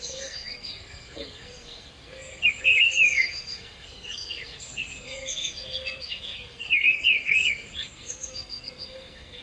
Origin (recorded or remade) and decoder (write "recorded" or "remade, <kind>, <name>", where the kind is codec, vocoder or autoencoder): remade, codec, SNAC